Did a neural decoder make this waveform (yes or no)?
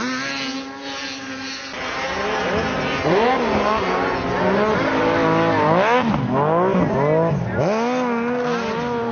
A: no